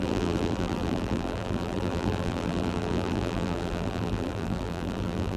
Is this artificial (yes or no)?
yes